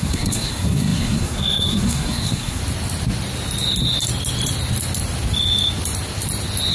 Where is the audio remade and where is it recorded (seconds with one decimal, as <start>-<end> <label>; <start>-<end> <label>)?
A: 0.0-2.6 remade; 2.6-6.7 recorded